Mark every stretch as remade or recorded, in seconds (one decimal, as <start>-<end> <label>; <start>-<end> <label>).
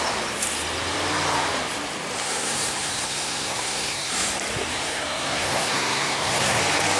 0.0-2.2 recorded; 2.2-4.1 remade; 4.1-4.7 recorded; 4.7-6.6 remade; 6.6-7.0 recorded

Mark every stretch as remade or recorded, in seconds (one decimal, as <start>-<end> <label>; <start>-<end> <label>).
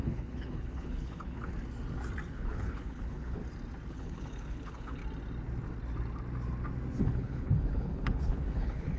0.0-1.5 remade; 1.5-2.3 recorded; 2.3-3.4 remade; 3.4-3.9 recorded; 3.9-5.0 remade; 5.0-7.0 recorded; 7.0-9.0 remade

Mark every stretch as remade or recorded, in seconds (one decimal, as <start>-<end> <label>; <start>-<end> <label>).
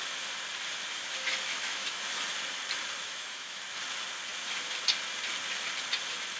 0.0-0.9 recorded; 0.9-2.0 remade; 2.0-3.0 recorded; 3.0-3.6 remade; 3.6-6.4 recorded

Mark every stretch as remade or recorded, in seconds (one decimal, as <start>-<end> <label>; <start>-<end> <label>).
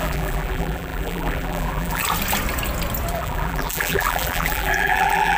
0.0-2.0 remade; 2.0-3.1 recorded; 3.1-5.4 remade